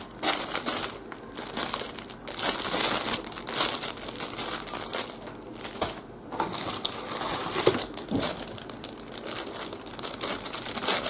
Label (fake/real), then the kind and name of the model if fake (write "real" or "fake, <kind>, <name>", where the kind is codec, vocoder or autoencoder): real